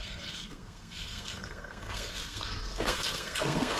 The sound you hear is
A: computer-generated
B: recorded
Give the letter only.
A